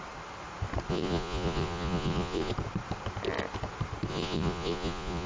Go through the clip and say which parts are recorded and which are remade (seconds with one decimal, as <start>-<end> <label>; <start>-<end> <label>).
0.0-0.9 recorded; 0.9-2.5 remade; 2.5-4.1 recorded; 4.1-5.3 remade